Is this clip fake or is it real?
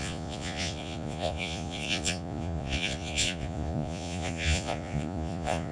fake